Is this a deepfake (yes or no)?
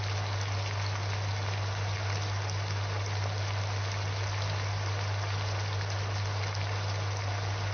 no